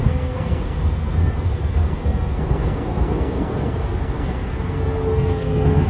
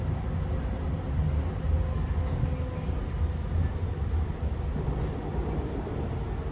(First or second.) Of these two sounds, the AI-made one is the first